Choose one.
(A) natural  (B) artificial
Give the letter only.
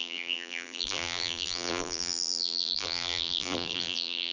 B